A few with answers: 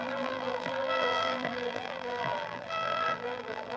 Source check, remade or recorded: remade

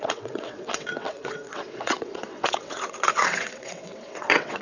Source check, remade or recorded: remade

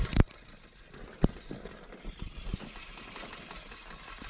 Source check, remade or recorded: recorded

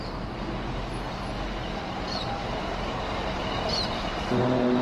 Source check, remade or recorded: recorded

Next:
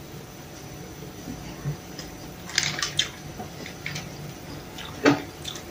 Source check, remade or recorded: recorded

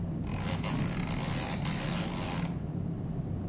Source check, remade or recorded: recorded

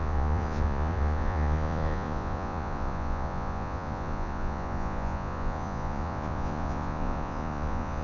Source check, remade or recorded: remade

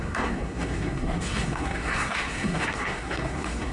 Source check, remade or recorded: remade